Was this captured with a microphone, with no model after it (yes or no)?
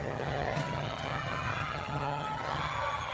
no